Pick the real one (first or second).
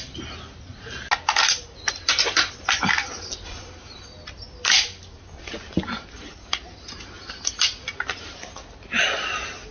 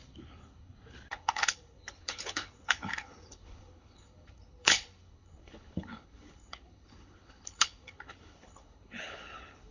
first